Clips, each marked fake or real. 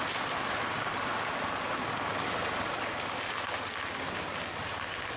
real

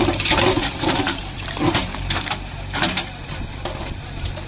fake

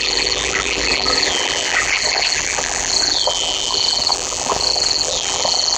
fake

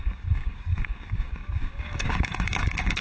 fake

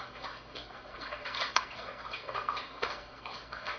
fake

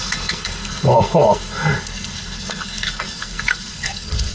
fake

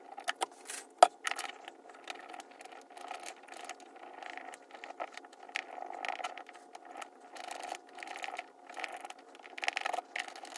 real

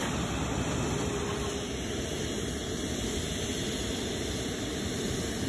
real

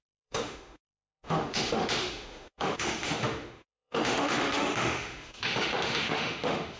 fake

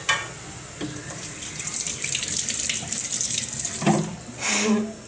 real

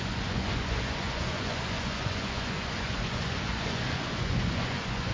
fake